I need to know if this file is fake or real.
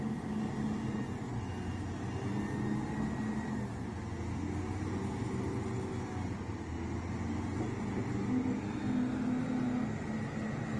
real